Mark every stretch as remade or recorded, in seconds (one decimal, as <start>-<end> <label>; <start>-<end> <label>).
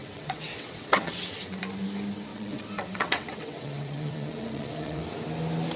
0.0-1.6 remade; 1.6-2.3 recorded; 2.3-5.0 remade; 5.0-5.8 recorded